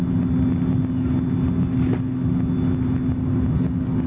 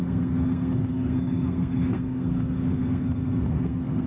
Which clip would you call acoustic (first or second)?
first